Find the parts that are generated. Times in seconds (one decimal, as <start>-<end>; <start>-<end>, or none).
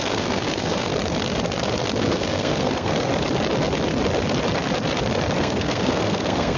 0.0-0.9; 2.0-3.1; 5.4-6.6